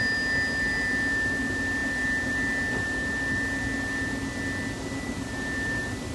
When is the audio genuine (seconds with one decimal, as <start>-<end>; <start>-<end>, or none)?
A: 0.0-6.1